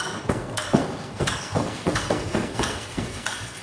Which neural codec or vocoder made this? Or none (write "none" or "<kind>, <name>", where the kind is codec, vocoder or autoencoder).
codec, SNAC